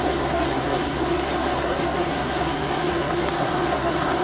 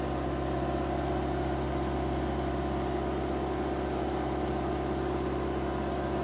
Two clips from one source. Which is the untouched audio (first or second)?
second